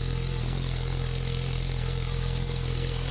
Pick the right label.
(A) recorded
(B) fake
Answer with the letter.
B